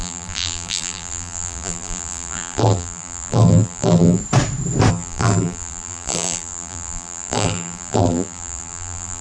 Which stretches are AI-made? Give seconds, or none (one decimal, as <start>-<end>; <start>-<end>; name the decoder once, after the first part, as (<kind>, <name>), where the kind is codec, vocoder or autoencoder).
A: 0.0-4.2 (vocoder, BigVGAN v2); 4.9-9.2